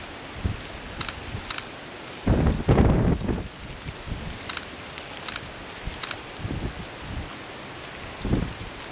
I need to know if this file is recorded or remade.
recorded